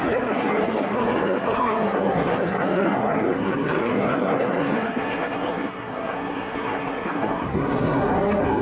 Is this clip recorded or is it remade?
remade